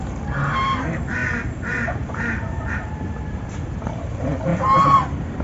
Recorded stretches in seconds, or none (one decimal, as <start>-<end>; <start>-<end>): 0.0-5.4